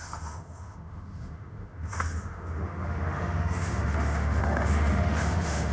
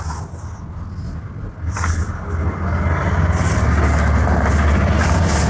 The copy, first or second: first